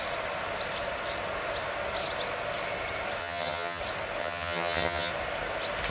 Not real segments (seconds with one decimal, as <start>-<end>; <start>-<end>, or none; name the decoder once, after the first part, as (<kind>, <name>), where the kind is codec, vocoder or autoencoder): 3.2-3.8 (vocoder, HiFi-GAN); 4.2-5.1